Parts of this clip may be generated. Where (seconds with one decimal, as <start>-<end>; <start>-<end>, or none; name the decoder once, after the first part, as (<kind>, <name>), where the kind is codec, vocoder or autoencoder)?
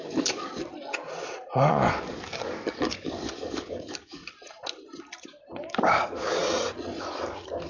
0.0-0.5 (codec, DAC); 1.7-4.2; 5.6-6.4; 7.0-7.7